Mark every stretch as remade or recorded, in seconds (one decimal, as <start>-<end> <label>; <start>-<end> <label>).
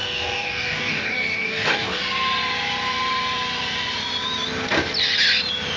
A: 0.0-2.0 remade; 2.0-5.8 recorded